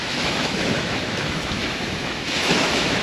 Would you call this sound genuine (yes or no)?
no